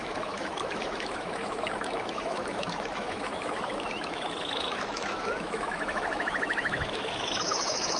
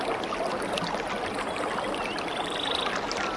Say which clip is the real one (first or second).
second